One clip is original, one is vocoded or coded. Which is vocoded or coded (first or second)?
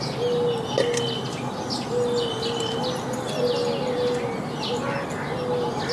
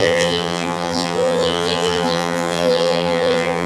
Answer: second